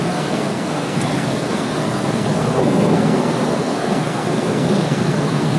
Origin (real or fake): fake